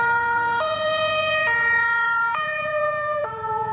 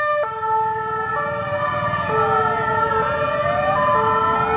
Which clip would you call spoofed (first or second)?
first